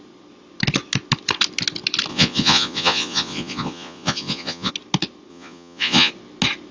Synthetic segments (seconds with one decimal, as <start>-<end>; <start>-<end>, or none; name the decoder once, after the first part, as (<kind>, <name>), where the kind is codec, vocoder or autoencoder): 2.1-4.7 (vocoder, Vocos); 5.3-6.1